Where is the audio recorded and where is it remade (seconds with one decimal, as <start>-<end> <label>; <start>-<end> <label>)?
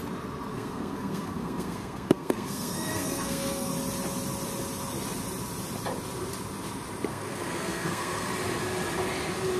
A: 0.0-0.5 recorded; 0.5-3.7 remade; 3.7-7.1 recorded; 7.1-8.3 remade; 8.3-9.6 recorded